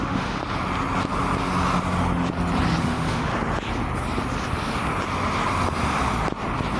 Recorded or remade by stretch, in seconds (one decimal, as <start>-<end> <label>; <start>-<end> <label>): 0.0-0.4 remade; 0.4-2.8 recorded; 2.8-3.3 remade; 3.3-6.8 recorded